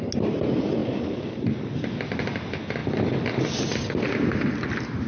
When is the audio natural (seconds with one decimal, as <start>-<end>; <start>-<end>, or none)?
0.0-2.8; 4.1-5.1